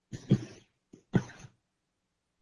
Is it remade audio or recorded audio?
remade